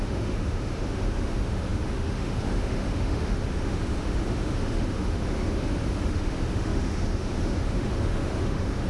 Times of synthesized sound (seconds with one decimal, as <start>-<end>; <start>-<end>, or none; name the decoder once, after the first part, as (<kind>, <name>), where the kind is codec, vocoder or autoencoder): 0.0-8.9 (autoencoder, DAC-VAE)